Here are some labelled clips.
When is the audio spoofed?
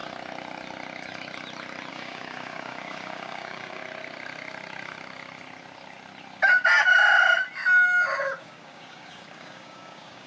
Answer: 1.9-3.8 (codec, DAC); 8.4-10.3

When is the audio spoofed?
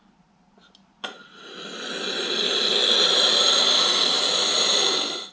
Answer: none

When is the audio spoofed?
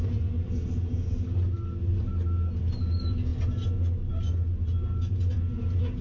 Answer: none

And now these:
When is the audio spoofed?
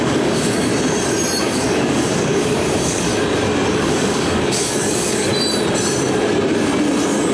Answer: 0.0-0.7 (codec, DAC); 1.4-3.1; 3.8-5.3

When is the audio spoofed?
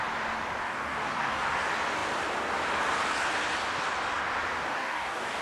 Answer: 0.6-1.4 (codec, DAC); 4.7-5.4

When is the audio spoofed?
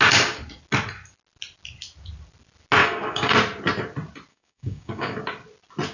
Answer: 2.8-3.3 (codec, DAC); 4.3-5.2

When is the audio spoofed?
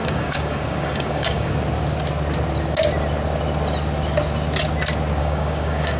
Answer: 0.0-1.5 (codec, DAC); 5.2-6.0